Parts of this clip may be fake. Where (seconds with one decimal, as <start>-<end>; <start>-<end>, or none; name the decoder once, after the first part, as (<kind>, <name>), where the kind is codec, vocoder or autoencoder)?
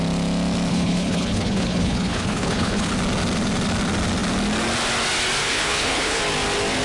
0.7-2.9 (codec, HILCodec); 5.4-6.2